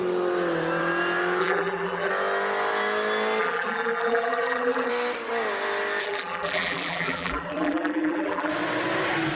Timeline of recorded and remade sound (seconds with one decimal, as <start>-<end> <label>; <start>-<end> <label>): 0.0-1.4 recorded; 1.4-2.1 remade; 2.1-3.4 recorded; 3.4-4.9 remade; 4.9-6.0 recorded; 6.0-8.5 remade; 8.5-9.3 recorded